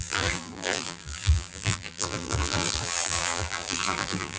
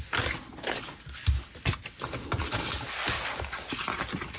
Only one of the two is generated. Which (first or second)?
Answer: first